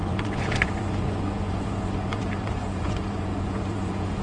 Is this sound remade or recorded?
remade